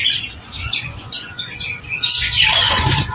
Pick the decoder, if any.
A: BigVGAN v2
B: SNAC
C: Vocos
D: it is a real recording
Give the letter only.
C